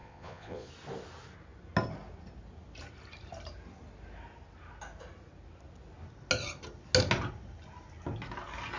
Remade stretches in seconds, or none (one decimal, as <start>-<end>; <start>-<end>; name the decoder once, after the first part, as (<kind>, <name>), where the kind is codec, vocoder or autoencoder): 0.0-0.7 (vocoder, Vocos)